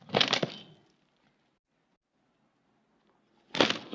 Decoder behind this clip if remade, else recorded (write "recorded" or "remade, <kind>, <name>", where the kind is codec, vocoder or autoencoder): recorded